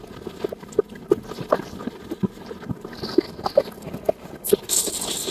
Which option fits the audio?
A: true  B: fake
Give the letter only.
A